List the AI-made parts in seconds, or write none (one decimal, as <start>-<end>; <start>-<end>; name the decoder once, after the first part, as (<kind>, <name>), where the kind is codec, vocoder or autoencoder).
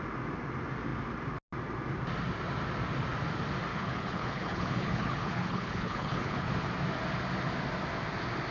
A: 3.7-6.5 (codec, HILCodec)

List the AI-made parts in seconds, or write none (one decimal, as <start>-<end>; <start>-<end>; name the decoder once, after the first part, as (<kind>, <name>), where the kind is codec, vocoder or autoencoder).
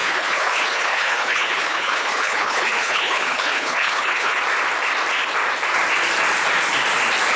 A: 0.0-4.4 (codec, HILCodec)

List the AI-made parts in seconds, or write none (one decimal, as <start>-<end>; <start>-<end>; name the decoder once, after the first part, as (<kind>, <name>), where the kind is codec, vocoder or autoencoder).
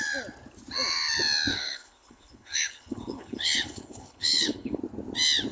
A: 1.5-4.8 (codec, HILCodec)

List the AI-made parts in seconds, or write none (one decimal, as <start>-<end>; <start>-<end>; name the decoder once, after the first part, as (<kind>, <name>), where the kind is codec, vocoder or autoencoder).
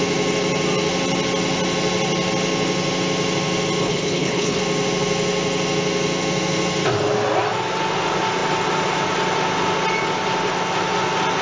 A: 3.8-4.6 (codec, HILCodec)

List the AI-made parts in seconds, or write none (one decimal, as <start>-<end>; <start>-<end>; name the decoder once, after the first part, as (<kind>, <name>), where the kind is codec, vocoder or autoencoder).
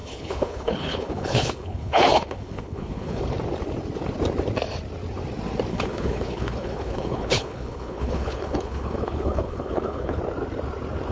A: 0.0-3.2 (codec, HILCodec); 5.7-10.2